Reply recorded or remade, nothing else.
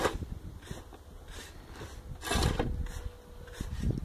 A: recorded